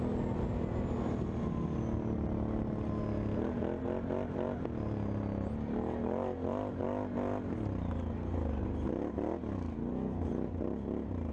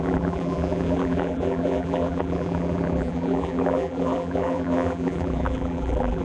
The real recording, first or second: first